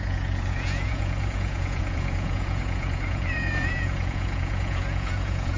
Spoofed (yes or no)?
yes